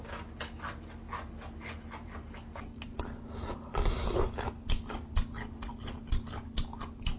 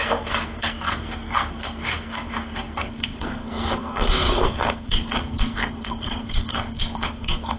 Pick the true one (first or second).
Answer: first